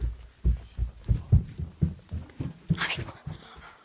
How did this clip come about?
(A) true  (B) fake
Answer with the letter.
A